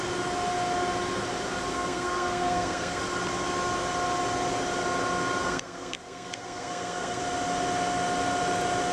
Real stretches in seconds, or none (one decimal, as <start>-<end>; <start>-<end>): 0.0-1.7; 3.0-5.4; 7.2-8.9

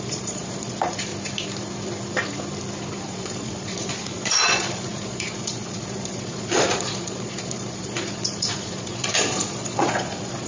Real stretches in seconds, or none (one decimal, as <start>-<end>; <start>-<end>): 1.1-3.0

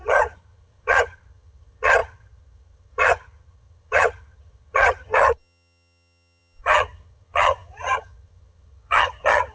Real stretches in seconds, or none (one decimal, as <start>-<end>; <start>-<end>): none

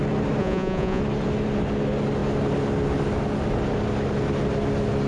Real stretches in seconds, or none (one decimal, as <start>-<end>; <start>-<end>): 0.0-0.4; 1.0-5.1

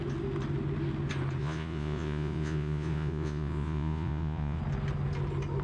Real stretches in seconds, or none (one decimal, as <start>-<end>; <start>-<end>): 0.0-1.4; 4.6-5.6

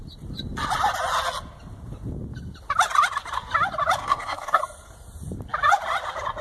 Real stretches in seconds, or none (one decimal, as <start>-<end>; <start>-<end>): 0.0-4.0; 4.6-6.4